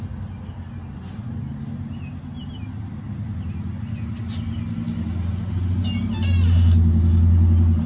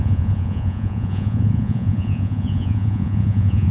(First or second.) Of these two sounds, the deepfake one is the second